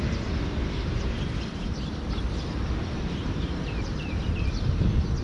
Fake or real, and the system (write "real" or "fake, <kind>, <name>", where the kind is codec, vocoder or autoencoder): fake, vocoder, BigVGAN v2